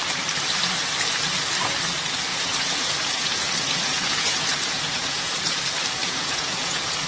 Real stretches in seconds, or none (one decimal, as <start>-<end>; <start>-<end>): 0.0-2.3; 5.6-6.0

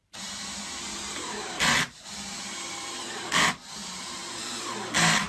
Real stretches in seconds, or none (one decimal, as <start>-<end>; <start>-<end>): 3.0-3.8; 4.7-5.3

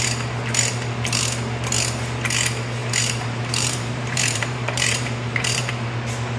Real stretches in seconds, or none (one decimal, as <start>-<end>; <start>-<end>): 0.0-2.8; 5.7-6.4

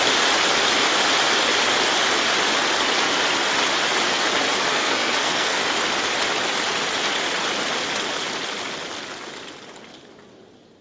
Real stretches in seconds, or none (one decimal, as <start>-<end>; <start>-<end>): 0.0-4.7; 5.6-10.8

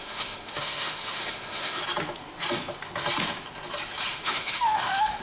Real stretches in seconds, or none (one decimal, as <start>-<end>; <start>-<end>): 1.8-4.1

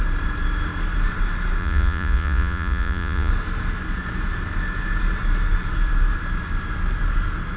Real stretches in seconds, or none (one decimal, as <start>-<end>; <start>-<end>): 0.0-1.6; 3.3-7.6

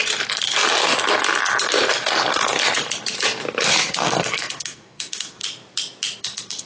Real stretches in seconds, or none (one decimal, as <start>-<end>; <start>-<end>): 0.0-4.0; 5.4-6.2

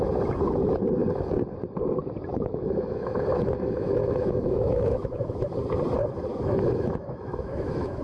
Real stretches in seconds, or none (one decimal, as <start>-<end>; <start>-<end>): 0.0-2.3; 5.5-6.3